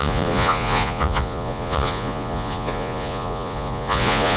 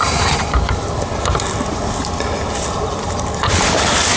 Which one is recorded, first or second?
second